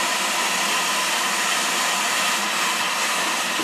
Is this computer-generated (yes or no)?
no